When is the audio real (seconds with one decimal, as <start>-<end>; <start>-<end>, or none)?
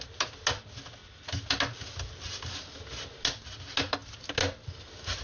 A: 0.0-5.2